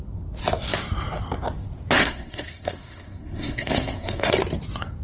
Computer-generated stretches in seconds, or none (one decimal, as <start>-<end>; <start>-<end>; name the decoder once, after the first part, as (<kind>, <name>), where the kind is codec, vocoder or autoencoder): 2.0-4.3 (codec, SNAC)